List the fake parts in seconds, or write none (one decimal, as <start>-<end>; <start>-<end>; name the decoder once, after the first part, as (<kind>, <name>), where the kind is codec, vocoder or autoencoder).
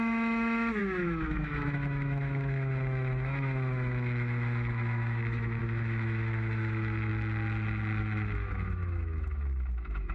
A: 0.0-7.1 (autoencoder, DAC-VAE); 8.0-10.1